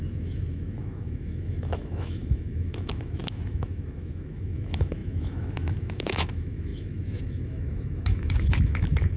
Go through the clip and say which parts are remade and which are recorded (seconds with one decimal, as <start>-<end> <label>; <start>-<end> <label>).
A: 0.0-9.2 remade